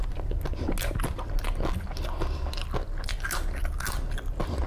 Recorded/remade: recorded